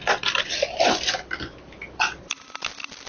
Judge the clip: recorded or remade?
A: recorded